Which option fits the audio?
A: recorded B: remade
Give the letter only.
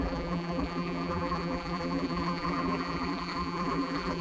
B